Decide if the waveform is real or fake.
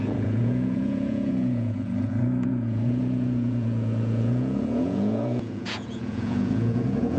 fake